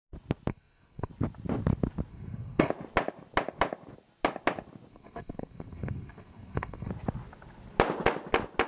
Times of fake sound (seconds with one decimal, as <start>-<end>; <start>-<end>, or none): 0.5-1.1; 2.1-2.7; 4.9-6.9